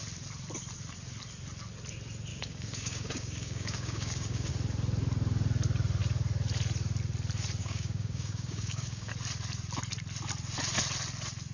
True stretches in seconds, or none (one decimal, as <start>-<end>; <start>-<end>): 0.0-2.3; 4.5-7.6; 9.1-11.5